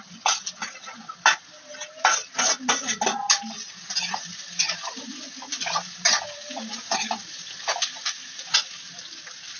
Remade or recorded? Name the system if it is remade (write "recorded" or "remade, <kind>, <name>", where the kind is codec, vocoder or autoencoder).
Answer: recorded